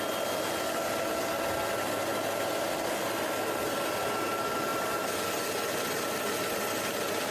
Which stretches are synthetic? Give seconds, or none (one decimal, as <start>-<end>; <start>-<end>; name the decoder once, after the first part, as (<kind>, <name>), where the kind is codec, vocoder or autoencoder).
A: 4.7-5.3 (vocoder, BigVGAN v2)